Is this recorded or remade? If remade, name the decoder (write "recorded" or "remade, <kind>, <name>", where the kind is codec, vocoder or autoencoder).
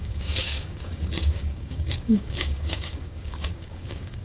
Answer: remade, codec, DAC